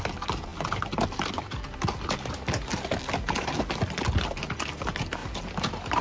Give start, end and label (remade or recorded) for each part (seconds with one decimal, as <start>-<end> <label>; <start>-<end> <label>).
0.0-5.2 recorded; 5.2-6.0 remade